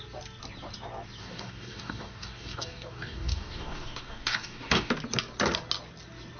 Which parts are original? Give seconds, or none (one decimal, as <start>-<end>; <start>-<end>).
0.0-1.2; 4.9-6.4

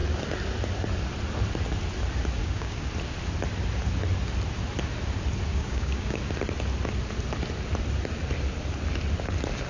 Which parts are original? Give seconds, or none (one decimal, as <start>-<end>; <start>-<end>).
0.0-2.4; 2.9-5.5; 6.2-9.7